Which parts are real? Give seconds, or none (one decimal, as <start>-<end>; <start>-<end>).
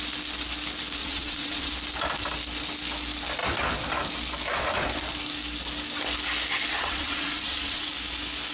0.0-1.0; 1.7-6.7; 7.9-8.5